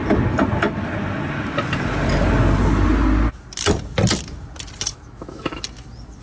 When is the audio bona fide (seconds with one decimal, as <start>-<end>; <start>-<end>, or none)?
0.0-4.9; 5.6-6.2